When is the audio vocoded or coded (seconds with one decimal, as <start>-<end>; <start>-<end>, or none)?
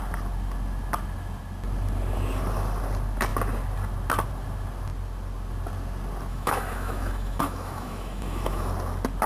6.3-8.7